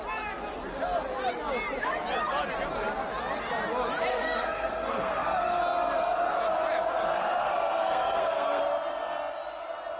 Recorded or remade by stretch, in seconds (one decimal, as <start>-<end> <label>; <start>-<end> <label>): 0.0-4.1 recorded; 4.1-5.6 remade; 5.6-7.2 recorded; 7.2-8.6 remade; 8.6-10.0 recorded